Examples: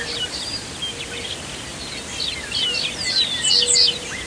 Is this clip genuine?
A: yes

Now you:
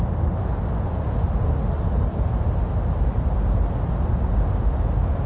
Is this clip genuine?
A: yes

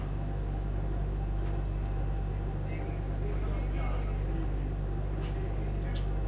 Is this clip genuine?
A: yes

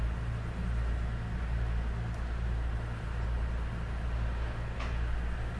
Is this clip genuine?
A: yes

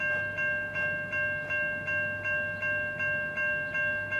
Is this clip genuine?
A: yes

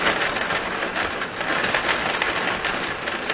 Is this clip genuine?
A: yes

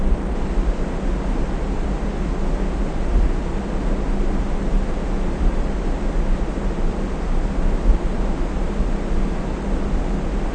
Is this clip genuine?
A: yes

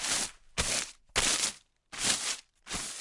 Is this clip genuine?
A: yes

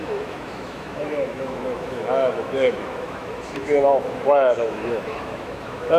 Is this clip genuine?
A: no